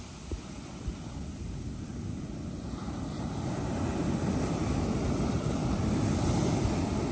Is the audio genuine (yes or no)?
yes